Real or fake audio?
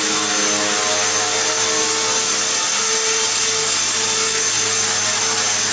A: real